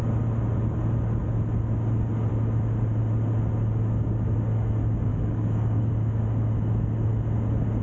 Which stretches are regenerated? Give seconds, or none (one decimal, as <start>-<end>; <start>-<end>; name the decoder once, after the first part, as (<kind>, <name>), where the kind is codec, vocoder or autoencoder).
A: 5.1-5.9 (codec, DAC)